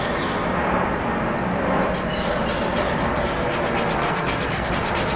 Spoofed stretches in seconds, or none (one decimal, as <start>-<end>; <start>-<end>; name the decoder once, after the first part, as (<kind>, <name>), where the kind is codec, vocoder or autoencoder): 4.0-4.7 (codec, SNAC)